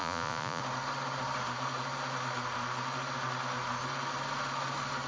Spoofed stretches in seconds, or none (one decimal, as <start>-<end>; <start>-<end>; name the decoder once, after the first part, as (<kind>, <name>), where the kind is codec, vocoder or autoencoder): 0.0-0.6 (vocoder, Vocos)